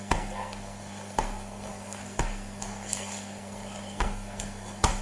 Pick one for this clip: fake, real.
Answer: fake